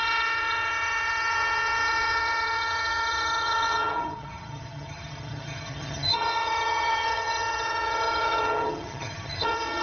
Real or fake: fake